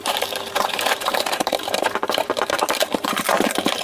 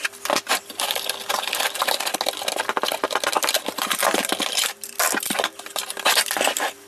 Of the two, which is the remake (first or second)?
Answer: first